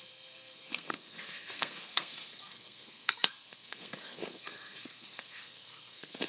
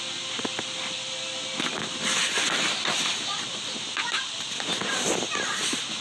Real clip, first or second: second